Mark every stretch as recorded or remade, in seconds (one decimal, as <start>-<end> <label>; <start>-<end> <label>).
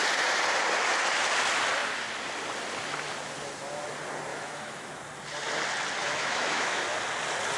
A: 0.0-4.3 recorded; 4.3-4.9 remade; 4.9-6.0 recorded; 6.0-6.8 remade; 6.8-7.6 recorded